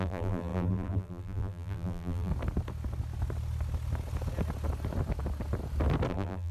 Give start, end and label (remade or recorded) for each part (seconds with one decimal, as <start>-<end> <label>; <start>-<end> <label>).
0.0-2.3 remade; 2.3-6.1 recorded; 6.1-6.5 remade